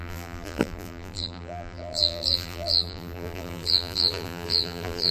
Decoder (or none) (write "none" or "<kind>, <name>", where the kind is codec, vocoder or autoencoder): vocoder, BigVGAN v2